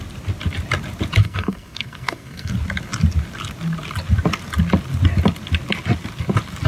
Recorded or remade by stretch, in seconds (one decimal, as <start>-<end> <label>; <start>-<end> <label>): 0.0-1.2 recorded; 1.2-2.5 remade; 2.5-6.7 recorded